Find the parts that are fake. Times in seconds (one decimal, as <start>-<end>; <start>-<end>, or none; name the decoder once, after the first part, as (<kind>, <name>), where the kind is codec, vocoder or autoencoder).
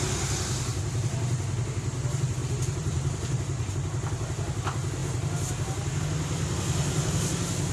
0.7-1.2 (vocoder, BigVGAN v2); 2.4-3.7